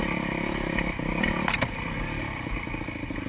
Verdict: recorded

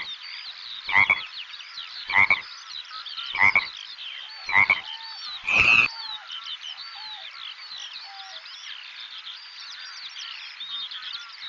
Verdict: recorded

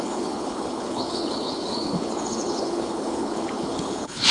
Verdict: remade